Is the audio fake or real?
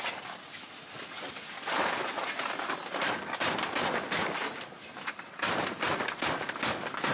real